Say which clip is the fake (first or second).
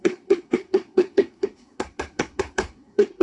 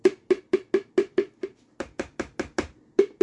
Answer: first